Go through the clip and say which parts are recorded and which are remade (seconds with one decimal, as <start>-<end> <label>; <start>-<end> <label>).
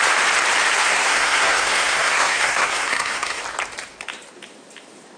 0.0-0.8 recorded; 0.8-3.4 remade; 3.4-5.2 recorded